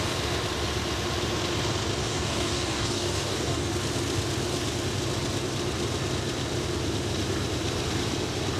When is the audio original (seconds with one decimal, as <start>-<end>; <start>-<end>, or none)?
0.0-2.0; 3.7-8.6